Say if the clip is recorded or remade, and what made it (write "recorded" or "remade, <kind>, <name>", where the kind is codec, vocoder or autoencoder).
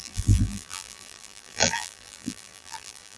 remade, vocoder, BigVGAN v2